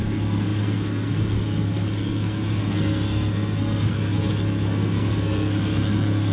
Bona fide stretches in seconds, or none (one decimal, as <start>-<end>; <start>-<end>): none